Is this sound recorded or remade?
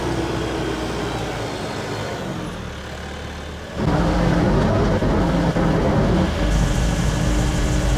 recorded